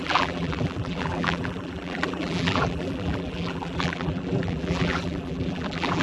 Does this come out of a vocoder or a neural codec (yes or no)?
yes